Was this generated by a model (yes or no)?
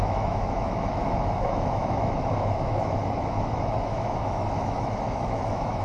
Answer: yes